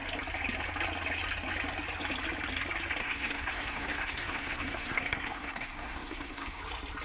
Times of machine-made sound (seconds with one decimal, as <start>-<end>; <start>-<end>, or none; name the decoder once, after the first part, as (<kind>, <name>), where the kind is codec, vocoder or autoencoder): 3.0-6.6 (codec, SNAC)